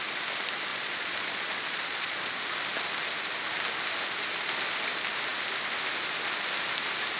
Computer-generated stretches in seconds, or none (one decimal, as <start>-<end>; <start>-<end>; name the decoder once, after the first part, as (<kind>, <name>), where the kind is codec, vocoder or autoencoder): 0.7-2.3 (vocoder, Vocos)

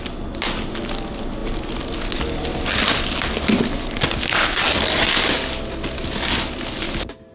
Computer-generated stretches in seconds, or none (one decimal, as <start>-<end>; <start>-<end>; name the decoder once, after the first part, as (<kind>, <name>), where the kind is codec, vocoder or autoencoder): none